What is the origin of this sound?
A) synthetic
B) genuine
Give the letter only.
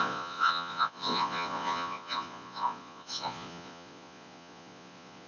A